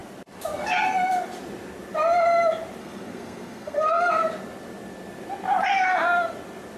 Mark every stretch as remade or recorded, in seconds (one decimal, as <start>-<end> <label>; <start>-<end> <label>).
0.0-2.8 recorded; 2.8-4.1 remade; 4.1-6.8 recorded